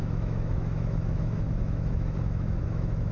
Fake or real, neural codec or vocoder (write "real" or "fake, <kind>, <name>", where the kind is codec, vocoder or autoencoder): fake, autoencoder, DAC-VAE